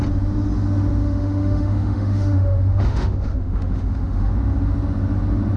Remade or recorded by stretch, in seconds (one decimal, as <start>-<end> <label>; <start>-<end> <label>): 0.0-1.0 recorded; 1.0-4.3 remade; 4.3-5.6 recorded